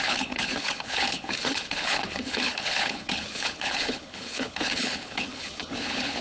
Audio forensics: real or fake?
fake